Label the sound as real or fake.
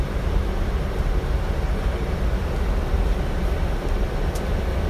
real